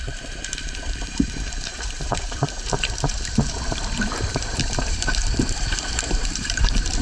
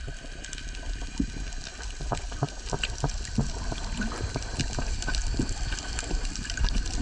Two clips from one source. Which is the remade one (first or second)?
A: first